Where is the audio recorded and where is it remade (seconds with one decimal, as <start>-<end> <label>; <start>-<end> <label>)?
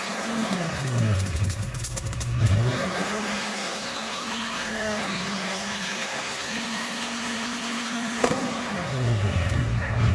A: 0.0-10.1 remade